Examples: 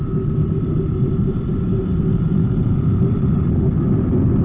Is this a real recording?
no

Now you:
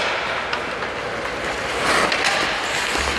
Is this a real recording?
yes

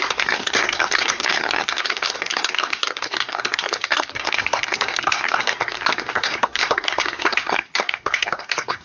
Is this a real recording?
no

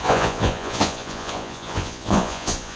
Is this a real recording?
no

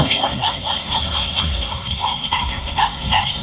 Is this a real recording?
no